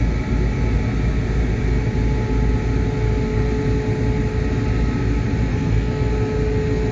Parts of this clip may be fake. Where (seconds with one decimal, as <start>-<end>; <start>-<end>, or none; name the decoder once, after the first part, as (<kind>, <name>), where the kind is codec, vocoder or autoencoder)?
5.5-6.1 (codec, SNAC)